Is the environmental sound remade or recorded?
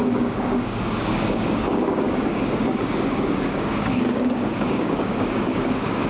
remade